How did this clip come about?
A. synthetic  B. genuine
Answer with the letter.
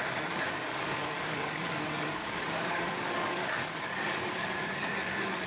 A